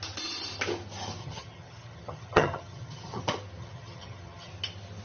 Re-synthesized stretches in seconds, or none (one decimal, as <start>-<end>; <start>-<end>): 1.2-3.2; 3.6-4.5